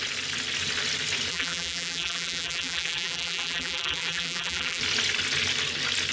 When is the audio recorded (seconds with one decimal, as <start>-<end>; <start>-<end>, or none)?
0.0-1.3; 4.8-6.1